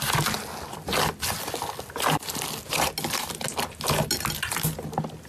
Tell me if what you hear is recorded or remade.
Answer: recorded